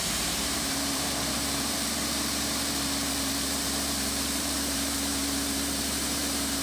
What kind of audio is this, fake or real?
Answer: fake